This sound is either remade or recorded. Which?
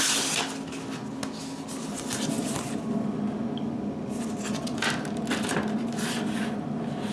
recorded